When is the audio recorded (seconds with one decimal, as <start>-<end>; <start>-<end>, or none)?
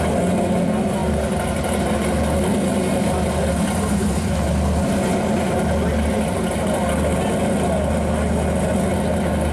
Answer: 0.0-9.5